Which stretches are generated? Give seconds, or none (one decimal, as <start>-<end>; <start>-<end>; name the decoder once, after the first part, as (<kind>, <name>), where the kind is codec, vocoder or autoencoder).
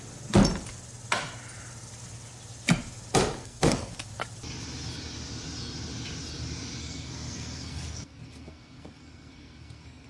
3.4-3.9 (codec, SNAC); 6.8-10.1